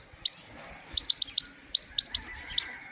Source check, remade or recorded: recorded